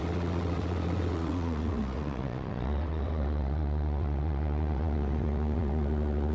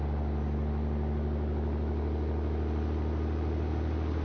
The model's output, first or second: first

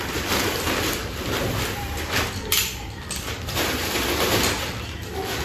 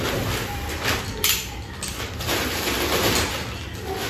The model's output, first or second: first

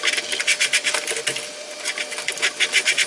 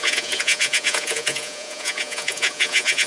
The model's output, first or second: second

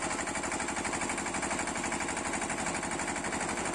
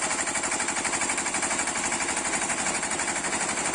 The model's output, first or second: second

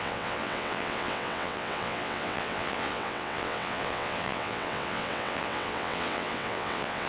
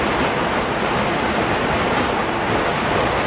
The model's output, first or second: first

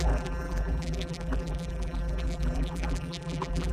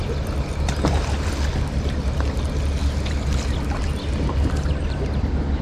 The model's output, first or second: first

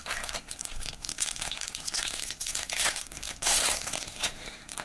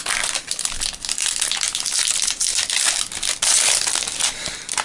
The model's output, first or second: first